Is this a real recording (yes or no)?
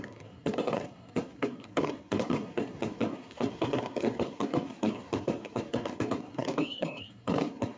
no